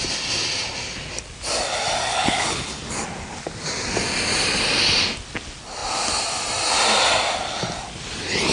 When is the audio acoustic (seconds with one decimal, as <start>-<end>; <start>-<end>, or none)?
0.0-2.1; 2.8-8.5